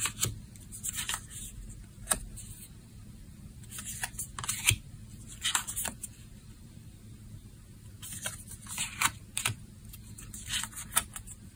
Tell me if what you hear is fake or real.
fake